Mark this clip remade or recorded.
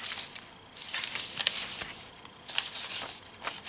recorded